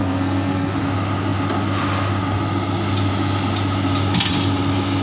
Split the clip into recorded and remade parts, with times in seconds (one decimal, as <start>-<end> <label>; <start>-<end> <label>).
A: 0.0-0.8 remade; 0.8-5.0 recorded

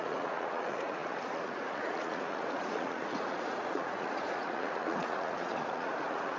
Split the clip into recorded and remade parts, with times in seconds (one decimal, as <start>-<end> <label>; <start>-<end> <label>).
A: 0.0-6.4 remade

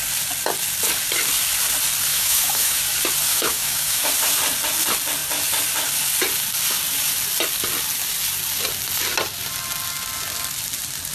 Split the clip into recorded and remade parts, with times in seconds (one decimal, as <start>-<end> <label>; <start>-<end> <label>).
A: 0.0-2.1 recorded; 2.1-2.8 remade; 2.8-3.3 recorded; 3.3-4.1 remade; 4.1-11.1 recorded

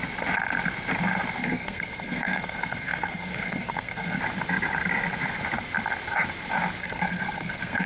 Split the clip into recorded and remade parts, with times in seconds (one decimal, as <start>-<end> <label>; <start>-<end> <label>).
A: 0.0-1.4 recorded; 1.4-4.2 remade; 4.2-6.8 recorded; 6.8-7.9 remade

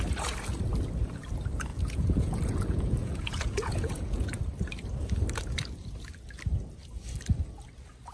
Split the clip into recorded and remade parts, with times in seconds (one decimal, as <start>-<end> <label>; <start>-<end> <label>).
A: 0.0-1.7 recorded; 1.7-4.4 remade; 4.4-8.1 recorded